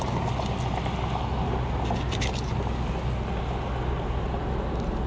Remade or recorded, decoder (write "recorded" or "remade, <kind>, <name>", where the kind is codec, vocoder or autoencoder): recorded